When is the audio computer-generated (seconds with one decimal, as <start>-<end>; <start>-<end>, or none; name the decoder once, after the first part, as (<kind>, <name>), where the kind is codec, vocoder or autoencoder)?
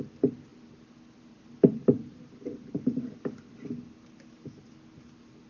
none